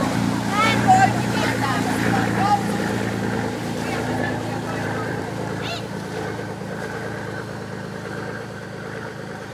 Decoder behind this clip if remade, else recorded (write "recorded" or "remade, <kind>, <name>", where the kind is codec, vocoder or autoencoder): remade, vocoder, BigVGAN v2